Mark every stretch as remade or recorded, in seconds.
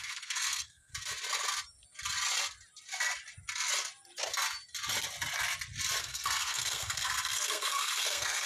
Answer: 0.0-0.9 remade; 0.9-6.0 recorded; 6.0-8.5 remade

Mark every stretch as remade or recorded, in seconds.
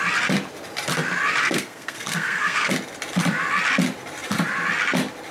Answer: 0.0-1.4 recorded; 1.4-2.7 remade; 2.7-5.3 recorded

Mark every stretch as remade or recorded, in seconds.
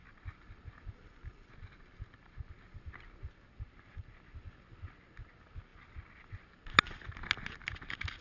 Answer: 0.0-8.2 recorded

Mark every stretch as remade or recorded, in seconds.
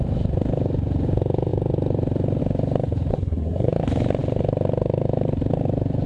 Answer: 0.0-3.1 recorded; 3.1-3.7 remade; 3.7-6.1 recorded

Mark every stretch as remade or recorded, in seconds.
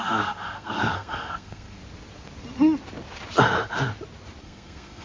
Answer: 0.0-1.8 remade; 1.8-4.4 recorded; 4.4-5.0 remade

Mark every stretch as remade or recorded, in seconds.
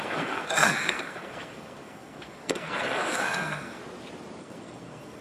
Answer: 0.0-3.8 remade; 3.8-4.4 recorded; 4.4-5.2 remade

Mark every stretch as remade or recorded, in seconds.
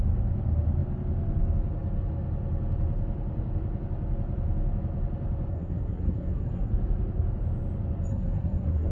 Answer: 0.0-5.5 recorded; 5.5-6.7 remade; 6.7-8.1 recorded; 8.1-8.9 remade